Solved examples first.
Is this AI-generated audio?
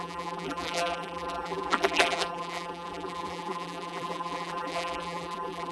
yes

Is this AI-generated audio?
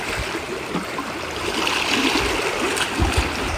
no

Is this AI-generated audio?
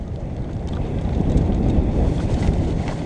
no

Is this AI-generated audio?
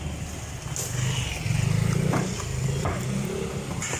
no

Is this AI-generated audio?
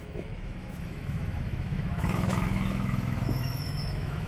yes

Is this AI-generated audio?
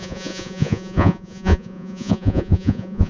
yes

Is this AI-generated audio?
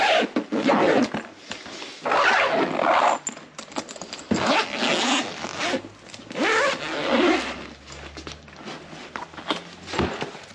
no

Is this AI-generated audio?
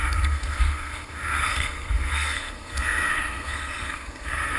yes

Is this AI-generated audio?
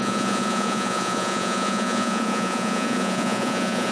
yes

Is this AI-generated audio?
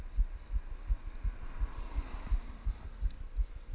no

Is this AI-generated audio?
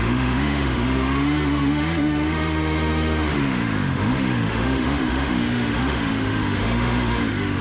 yes